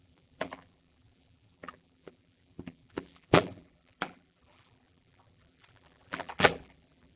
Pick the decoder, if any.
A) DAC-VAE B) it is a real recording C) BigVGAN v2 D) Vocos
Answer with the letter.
C